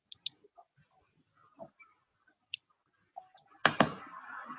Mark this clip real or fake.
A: real